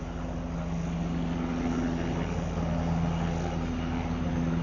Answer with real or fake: real